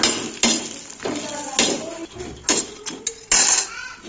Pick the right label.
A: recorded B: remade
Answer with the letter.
A